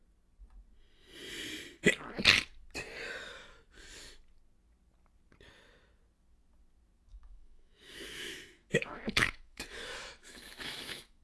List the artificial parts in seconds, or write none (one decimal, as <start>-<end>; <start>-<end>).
7.1-11.2